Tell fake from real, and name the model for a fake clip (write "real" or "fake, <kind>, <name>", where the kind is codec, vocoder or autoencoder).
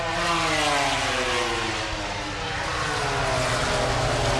real